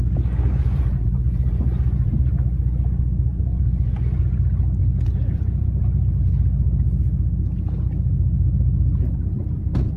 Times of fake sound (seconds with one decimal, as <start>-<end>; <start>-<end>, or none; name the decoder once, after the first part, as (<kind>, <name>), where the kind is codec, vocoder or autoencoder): 0.5-2.3 (vocoder, Vocos); 3.3-4.0; 4.8-6.2